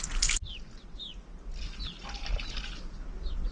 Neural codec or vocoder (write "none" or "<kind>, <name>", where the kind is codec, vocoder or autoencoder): none